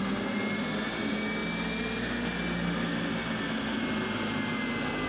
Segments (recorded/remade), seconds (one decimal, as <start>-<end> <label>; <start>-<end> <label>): 0.0-5.1 recorded